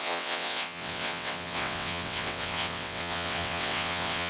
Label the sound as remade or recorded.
remade